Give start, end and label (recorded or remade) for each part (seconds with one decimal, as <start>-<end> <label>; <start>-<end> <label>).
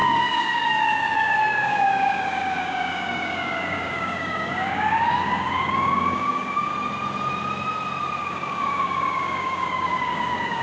0.0-6.7 remade; 6.7-8.2 recorded; 8.2-10.6 remade